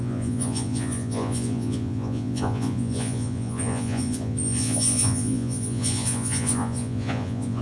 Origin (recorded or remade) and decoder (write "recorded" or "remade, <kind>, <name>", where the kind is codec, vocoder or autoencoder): remade, vocoder, Vocos